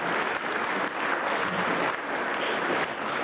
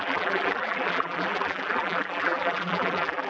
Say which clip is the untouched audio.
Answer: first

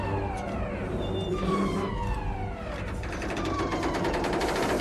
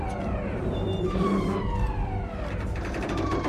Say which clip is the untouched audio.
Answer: first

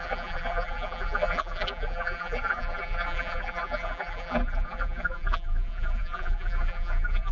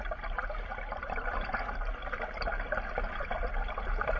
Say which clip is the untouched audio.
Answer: second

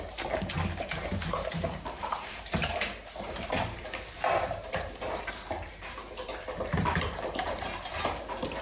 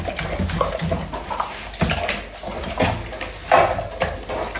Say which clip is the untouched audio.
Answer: second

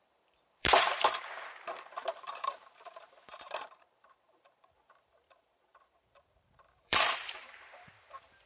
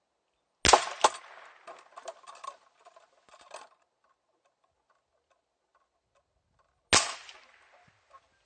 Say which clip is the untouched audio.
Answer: second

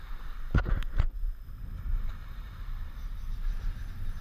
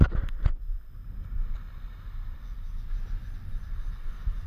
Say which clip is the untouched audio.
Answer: second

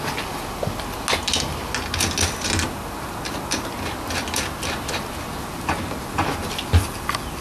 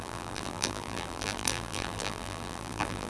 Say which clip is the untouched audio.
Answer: first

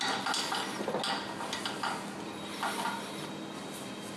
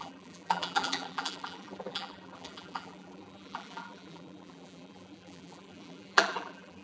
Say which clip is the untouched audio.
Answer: first